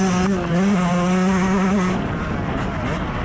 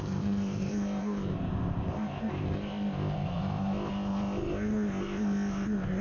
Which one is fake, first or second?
second